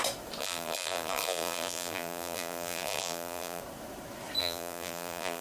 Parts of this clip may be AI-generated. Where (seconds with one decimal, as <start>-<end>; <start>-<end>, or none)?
0.4-3.6; 4.4-5.4